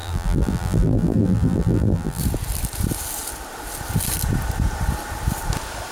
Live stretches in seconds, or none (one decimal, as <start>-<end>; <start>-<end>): 2.2-5.9